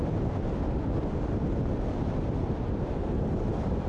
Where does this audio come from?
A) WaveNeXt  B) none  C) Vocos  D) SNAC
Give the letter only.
B